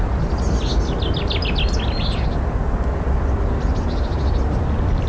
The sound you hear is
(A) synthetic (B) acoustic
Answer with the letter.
B